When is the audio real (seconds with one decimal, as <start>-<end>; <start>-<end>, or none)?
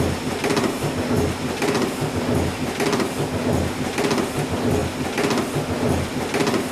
0.0-6.7